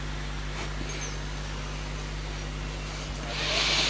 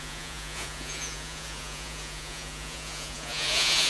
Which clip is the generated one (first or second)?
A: second